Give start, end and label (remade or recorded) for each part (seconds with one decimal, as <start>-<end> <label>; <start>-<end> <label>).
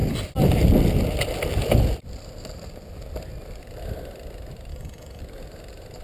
0.0-4.7 recorded; 4.7-5.2 remade; 5.2-6.0 recorded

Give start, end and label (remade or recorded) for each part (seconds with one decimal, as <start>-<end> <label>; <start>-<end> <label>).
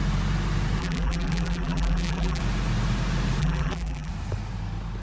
0.0-0.8 recorded; 0.8-2.4 remade; 2.4-3.4 recorded; 3.4-4.1 remade; 4.1-5.0 recorded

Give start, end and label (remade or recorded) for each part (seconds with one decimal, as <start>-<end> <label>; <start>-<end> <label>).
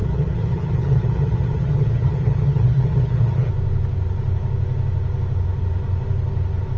0.0-3.5 remade; 3.5-6.8 recorded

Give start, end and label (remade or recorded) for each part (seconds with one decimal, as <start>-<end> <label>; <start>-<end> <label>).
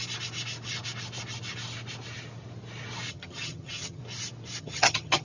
0.0-3.1 recorded; 3.1-4.0 remade; 4.0-4.6 recorded; 4.6-5.2 remade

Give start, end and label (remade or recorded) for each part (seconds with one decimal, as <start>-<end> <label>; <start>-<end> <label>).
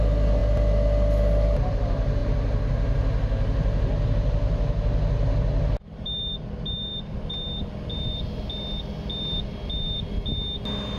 0.0-11.0 recorded